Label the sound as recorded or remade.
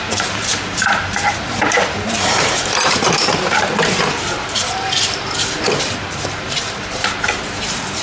remade